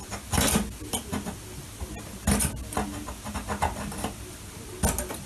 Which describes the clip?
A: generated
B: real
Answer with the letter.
B